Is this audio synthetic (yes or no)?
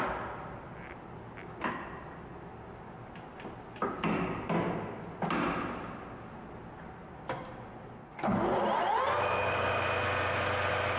no